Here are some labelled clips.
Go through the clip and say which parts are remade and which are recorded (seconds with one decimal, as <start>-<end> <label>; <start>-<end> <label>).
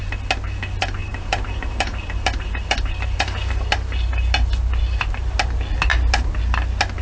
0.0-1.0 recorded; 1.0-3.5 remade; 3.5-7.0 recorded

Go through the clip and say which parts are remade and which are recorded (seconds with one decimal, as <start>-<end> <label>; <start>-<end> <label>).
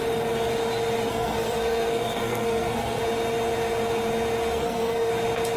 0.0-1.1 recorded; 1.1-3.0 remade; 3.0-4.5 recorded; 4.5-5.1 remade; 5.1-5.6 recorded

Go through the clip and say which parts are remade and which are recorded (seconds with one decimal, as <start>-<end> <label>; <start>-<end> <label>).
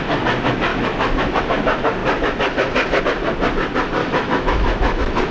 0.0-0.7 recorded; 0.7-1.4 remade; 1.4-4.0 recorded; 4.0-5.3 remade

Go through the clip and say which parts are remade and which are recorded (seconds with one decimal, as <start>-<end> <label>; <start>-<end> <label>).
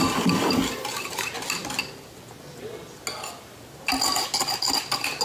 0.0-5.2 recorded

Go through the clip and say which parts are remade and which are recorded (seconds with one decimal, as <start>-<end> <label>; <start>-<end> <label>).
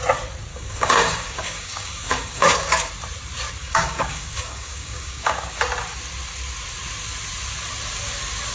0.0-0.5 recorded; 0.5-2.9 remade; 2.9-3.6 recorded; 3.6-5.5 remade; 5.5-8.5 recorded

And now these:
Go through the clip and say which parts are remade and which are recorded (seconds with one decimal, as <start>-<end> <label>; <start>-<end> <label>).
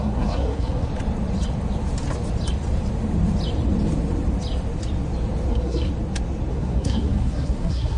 0.0-0.9 remade; 0.9-5.5 recorded; 5.5-5.9 remade; 5.9-6.5 recorded; 6.5-8.0 remade